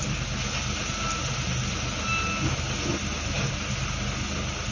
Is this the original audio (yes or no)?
yes